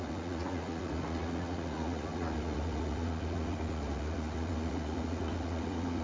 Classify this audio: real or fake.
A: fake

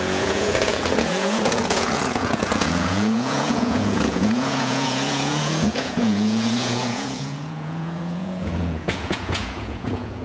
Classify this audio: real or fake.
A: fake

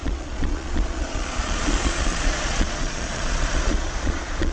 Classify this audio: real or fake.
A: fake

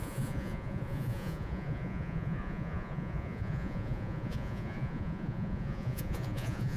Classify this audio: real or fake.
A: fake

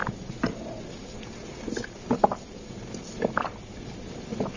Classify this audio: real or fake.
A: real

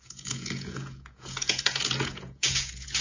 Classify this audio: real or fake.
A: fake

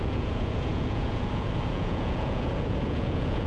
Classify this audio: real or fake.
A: fake